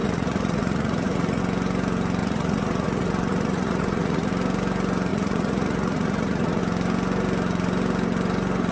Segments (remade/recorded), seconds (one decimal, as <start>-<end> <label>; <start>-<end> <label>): 0.0-1.4 remade; 1.4-2.2 recorded; 2.2-4.3 remade; 4.3-5.1 recorded; 5.1-6.6 remade; 6.6-8.7 recorded

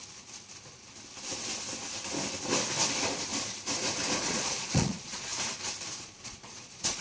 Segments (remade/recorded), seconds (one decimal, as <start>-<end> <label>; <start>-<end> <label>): 0.0-4.2 recorded; 4.2-5.3 remade; 5.3-6.0 recorded; 6.0-7.0 remade

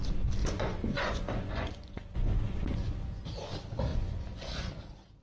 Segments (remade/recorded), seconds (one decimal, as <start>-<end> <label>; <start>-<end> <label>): 0.0-0.4 recorded; 0.4-3.5 remade; 3.5-3.9 recorded; 3.9-4.7 remade; 4.7-5.2 recorded

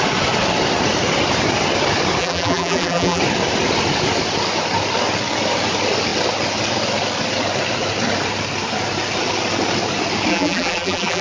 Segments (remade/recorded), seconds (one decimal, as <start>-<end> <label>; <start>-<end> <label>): 0.0-2.2 recorded; 2.2-3.2 remade; 3.2-10.3 recorded; 10.3-11.2 remade

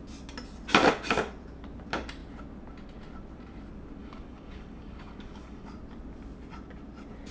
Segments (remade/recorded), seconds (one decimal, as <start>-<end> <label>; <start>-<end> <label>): 0.0-4.0 recorded; 4.0-5.7 remade; 5.7-7.3 recorded

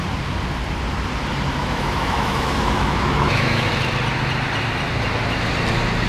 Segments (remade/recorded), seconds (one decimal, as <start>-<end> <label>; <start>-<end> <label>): 0.0-1.6 recorded; 1.6-3.7 remade; 3.7-6.1 recorded

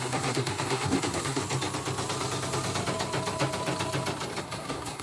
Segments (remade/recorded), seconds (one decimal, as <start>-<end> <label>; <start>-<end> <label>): 0.0-1.4 remade; 1.4-4.4 recorded; 4.4-5.0 remade

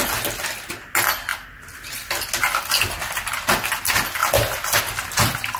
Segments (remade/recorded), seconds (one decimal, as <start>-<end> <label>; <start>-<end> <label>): 0.0-4.2 recorded; 4.2-4.8 remade; 4.8-5.6 recorded